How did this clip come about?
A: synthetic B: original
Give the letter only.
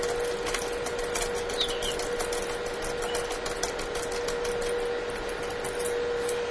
B